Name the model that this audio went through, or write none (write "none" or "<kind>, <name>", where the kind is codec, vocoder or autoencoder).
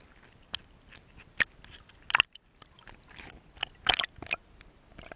none